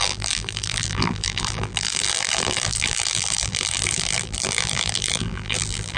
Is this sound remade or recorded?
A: remade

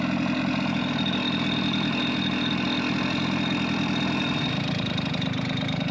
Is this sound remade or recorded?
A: recorded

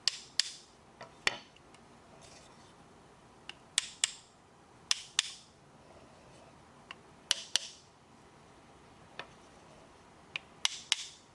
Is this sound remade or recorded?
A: recorded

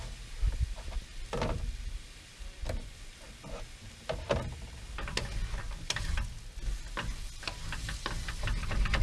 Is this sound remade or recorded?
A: recorded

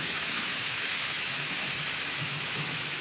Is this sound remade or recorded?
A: remade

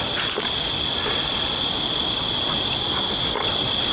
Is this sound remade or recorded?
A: recorded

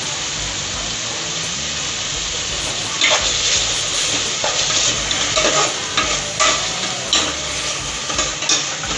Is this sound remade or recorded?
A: recorded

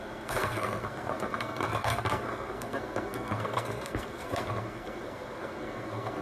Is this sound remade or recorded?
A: remade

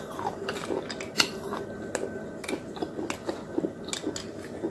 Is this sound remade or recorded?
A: recorded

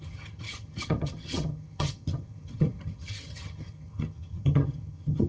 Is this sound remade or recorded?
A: remade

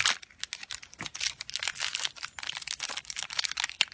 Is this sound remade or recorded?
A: recorded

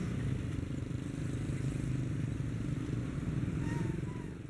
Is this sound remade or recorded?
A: recorded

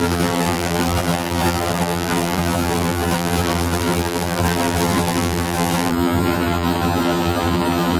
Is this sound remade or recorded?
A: remade